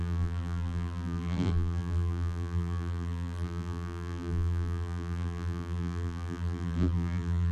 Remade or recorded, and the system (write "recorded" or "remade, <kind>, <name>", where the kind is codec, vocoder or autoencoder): remade, vocoder, BigVGAN v2